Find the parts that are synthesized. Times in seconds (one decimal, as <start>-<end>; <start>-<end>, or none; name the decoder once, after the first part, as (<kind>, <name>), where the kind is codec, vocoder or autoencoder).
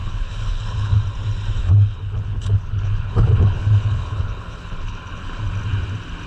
0.0-1.0 (codec, HILCodec); 1.6-5.4